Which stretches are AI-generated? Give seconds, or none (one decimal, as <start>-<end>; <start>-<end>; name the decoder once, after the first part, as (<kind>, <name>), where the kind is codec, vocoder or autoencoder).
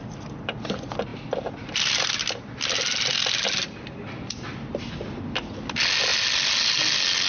none